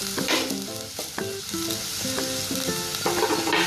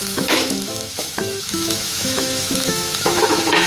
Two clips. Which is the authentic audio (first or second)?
first